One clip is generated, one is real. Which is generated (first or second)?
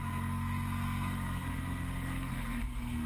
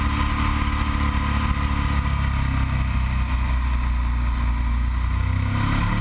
first